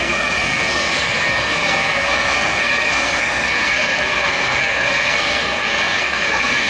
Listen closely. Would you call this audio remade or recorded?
remade